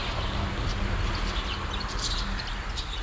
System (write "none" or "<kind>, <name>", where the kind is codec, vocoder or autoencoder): none